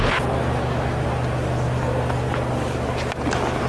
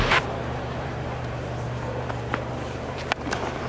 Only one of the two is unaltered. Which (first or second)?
first